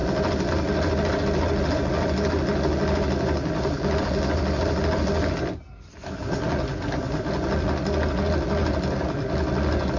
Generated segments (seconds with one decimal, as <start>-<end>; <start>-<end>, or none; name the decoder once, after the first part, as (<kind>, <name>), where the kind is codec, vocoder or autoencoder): none